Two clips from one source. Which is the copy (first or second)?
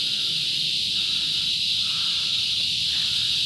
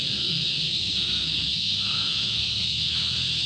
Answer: second